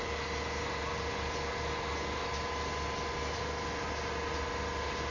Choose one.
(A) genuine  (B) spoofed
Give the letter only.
A